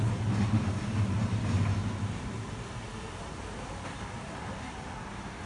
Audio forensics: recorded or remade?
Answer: recorded